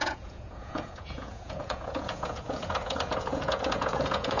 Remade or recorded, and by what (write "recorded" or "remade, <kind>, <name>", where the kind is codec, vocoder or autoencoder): remade, vocoder, Vocos